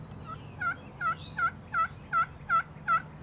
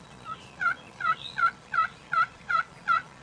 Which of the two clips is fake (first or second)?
second